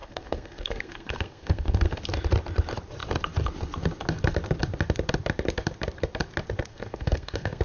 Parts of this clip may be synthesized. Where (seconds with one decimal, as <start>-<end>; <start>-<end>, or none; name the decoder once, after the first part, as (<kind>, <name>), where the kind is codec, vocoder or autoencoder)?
0.0-2.0 (codec, SNAC); 6.7-7.6